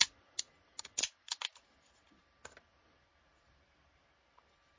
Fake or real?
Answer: real